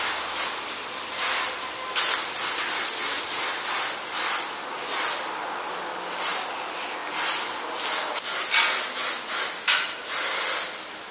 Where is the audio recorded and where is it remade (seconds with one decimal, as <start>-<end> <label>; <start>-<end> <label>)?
0.0-11.1 recorded